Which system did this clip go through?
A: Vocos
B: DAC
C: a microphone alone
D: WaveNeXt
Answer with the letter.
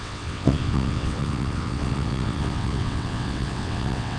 D